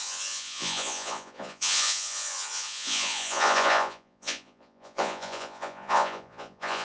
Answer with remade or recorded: remade